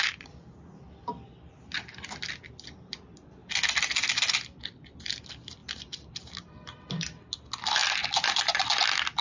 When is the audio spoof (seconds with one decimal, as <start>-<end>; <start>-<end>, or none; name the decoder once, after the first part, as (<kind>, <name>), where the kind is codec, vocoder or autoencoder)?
5.6-6.5 (vocoder, BigVGAN v2)

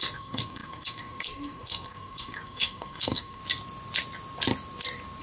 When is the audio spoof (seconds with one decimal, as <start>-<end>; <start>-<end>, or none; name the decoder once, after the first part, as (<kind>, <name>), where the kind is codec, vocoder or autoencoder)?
0.0-3.4 (codec, SNAC)

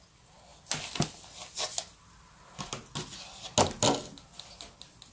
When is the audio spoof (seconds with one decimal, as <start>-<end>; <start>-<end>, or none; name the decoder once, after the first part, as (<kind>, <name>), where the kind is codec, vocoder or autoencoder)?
none

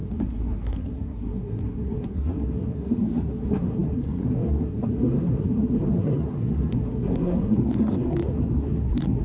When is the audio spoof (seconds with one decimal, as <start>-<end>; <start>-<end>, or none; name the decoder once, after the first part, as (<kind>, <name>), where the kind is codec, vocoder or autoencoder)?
0.0-9.2 (codec, SNAC)

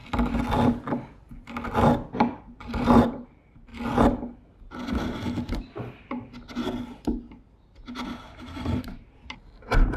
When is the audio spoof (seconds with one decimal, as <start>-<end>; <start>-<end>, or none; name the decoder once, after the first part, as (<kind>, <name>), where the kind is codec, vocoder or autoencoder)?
2.4-3.7 (vocoder, BigVGAN v2); 7.8-10.0

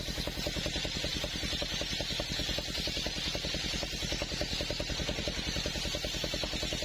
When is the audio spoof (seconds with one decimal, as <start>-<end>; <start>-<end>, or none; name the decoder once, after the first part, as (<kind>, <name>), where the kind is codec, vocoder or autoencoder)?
none